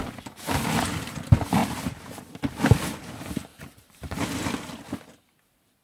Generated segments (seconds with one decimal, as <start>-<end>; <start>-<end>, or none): 1.6-2.2; 3.5-4.1